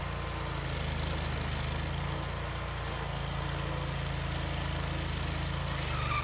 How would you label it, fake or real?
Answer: real